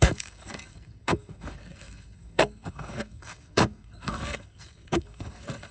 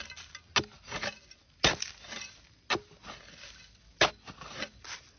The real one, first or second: second